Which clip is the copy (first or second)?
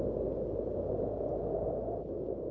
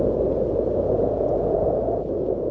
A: second